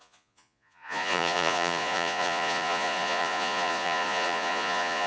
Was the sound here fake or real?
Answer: fake